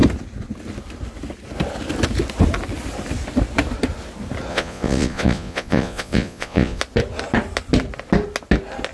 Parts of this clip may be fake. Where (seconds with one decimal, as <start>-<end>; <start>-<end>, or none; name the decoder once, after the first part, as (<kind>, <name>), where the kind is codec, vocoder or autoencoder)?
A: 4.5-6.8 (vocoder, Vocos)